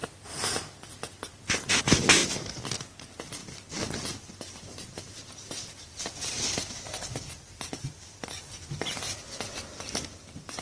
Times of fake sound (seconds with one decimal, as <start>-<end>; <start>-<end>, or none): 3.4-8.2